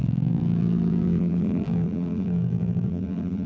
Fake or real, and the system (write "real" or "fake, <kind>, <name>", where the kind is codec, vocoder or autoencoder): fake, vocoder, BigVGAN v2